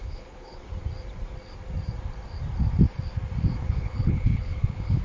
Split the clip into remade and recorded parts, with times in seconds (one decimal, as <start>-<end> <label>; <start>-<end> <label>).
0.0-0.6 remade; 0.6-3.6 recorded; 3.6-5.0 remade